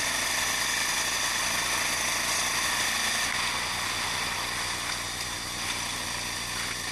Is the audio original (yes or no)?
yes